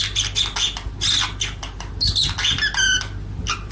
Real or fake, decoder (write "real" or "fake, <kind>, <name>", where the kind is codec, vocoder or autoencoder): real